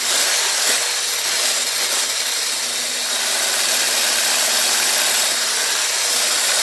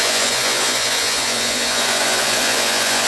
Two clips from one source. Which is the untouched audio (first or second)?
first